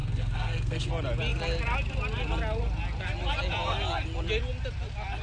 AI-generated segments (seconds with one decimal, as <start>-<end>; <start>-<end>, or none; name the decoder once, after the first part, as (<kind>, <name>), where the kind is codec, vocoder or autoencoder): 0.0-0.9 (codec, SNAC)